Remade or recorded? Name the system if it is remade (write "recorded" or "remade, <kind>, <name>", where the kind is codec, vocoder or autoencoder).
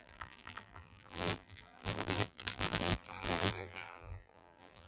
remade, vocoder, BigVGAN v2